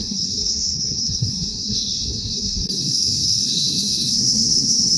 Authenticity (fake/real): fake